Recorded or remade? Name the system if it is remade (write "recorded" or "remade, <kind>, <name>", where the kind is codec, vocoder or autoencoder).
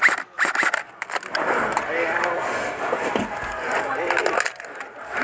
recorded